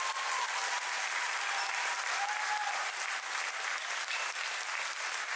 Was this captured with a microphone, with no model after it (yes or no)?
yes